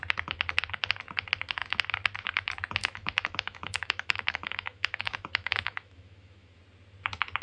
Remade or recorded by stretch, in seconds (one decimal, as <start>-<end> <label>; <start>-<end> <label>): 0.0-2.8 recorded; 2.8-6.6 remade; 6.6-7.4 recorded